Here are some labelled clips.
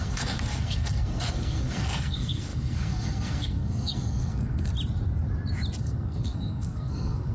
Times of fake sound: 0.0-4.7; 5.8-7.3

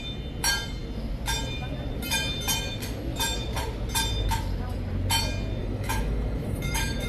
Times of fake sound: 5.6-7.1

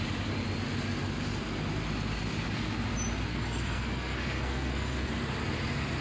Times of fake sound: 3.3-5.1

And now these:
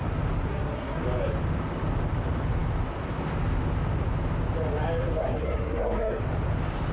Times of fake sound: 0.5-1.0; 5.2-6.2

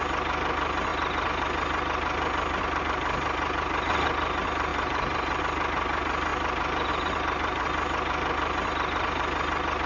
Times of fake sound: 4.7-5.4